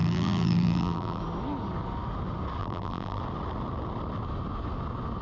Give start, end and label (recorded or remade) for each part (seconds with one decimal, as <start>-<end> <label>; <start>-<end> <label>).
0.0-1.2 remade; 1.2-2.6 recorded; 2.6-3.2 remade; 3.2-5.2 recorded